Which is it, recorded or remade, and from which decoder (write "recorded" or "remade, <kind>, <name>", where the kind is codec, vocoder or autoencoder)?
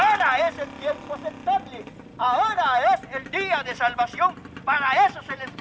recorded